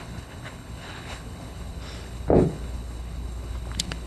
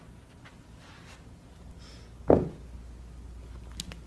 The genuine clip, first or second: second